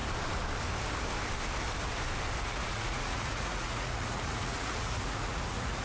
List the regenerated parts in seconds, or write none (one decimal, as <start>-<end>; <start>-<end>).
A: 2.4-5.8